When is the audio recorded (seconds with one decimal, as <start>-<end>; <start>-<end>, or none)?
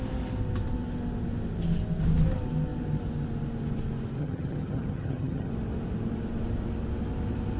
0.0-4.2; 5.5-7.6